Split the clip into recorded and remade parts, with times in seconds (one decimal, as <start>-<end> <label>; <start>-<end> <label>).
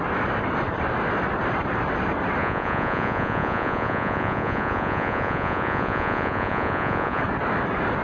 0.0-2.4 recorded; 2.4-7.2 remade; 7.2-8.0 recorded